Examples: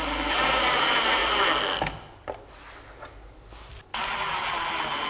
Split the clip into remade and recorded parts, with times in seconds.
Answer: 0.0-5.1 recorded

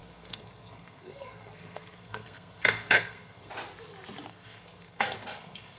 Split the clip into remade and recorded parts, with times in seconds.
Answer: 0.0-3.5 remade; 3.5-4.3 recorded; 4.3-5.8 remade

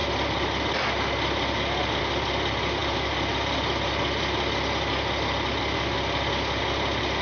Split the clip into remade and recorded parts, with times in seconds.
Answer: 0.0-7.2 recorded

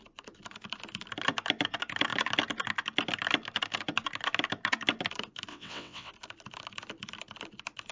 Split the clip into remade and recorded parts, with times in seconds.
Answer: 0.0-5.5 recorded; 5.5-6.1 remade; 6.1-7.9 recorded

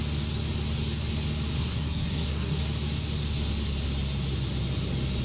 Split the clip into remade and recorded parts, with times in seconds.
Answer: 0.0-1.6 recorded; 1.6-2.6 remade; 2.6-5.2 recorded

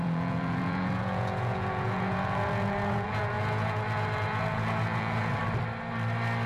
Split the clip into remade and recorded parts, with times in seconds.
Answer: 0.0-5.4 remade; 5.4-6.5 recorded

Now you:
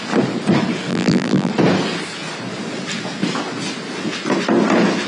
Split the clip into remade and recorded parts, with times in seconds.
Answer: 0.0-0.9 recorded; 0.9-1.5 remade; 1.5-5.1 recorded

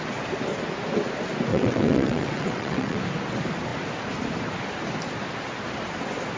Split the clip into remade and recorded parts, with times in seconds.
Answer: 0.0-1.5 recorded; 1.5-3.0 remade; 3.0-6.4 recorded